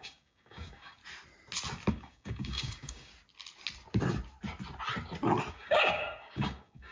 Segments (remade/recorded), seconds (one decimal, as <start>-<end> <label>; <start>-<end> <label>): 0.0-1.0 remade; 1.0-1.9 recorded; 1.9-3.1 remade; 3.1-5.5 recorded; 5.5-6.9 remade